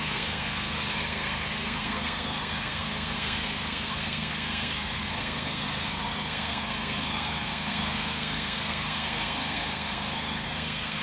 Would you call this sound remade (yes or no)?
yes